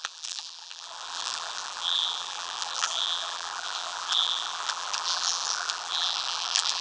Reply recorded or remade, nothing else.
remade